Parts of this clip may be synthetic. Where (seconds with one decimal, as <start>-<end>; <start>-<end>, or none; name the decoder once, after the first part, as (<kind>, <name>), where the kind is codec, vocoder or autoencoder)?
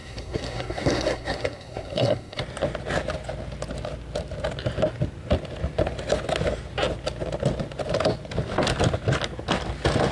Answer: 0.0-2.4 (codec, SNAC)